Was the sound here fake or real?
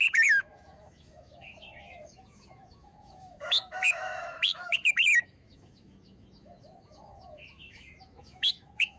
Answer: fake